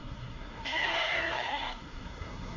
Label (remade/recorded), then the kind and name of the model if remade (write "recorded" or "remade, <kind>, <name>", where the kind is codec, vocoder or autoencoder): remade, codec, SNAC